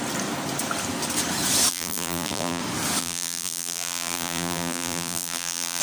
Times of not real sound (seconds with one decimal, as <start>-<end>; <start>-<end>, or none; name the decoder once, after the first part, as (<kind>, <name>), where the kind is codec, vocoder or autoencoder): 1.7-2.6 (vocoder, BigVGAN v2); 3.0-5.8